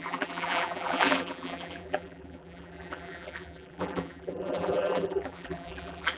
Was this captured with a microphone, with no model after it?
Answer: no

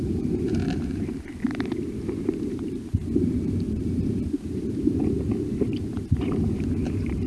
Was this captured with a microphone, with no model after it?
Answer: no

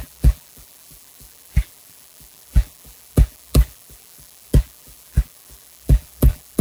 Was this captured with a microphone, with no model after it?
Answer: no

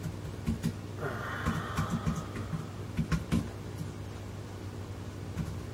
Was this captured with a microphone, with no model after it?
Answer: yes